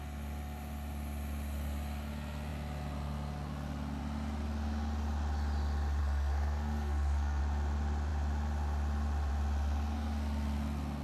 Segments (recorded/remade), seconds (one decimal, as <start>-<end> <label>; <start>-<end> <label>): 0.0-6.0 recorded; 6.0-7.4 remade; 7.4-11.0 recorded